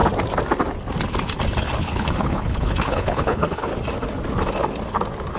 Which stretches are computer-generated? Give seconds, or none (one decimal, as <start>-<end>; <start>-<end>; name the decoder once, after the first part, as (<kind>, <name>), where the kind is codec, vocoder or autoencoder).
1.8-3.7 (codec, HILCodec)

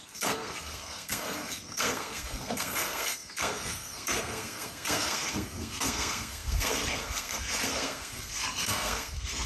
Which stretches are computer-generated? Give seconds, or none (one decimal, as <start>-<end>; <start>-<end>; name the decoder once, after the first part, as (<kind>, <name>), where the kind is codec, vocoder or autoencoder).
0.0-9.5 (codec, SNAC)

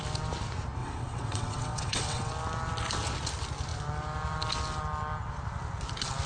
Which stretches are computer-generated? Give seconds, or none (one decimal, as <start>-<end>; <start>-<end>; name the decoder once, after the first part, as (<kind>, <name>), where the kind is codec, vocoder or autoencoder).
0.8-2.3 (vocoder, WaveNeXt)

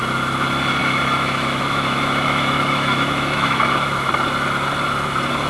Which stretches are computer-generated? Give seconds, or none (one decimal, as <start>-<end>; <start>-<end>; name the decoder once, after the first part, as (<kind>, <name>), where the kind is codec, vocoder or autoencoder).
0.8-4.1 (autoencoder, DAC-VAE)

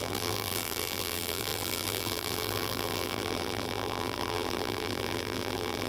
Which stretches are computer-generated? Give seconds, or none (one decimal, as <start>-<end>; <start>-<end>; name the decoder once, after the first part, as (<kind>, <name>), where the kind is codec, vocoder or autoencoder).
0.0-5.9 (vocoder, BigVGAN v2)